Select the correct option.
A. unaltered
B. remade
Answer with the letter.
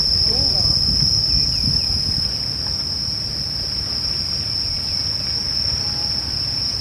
A